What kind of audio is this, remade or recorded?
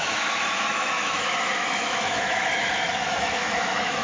remade